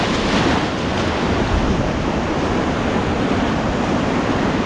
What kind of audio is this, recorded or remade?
recorded